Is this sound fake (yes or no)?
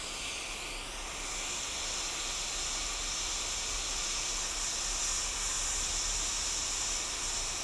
no